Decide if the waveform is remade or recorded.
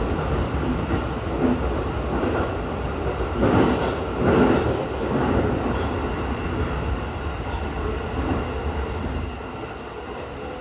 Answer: recorded